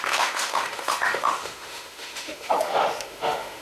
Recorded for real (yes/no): no